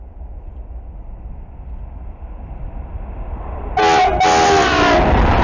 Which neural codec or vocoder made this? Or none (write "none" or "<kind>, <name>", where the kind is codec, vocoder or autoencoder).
none